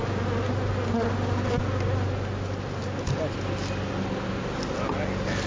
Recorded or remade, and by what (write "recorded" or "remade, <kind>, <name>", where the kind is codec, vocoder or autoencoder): recorded